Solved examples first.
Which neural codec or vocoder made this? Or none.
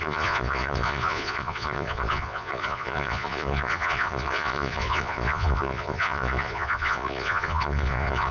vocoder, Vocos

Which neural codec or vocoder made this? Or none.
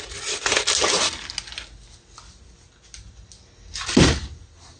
none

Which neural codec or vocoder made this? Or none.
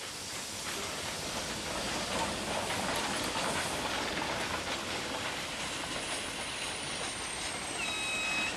none